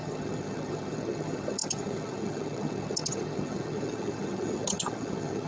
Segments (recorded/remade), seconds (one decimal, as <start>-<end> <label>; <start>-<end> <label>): 0.0-5.5 remade